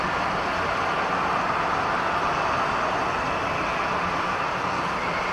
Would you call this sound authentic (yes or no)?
yes